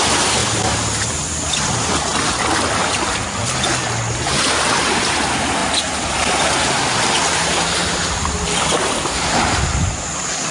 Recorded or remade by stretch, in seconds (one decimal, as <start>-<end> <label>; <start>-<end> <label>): 0.0-10.5 recorded